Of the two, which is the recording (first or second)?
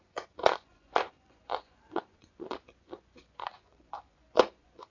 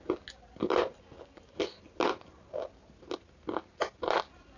second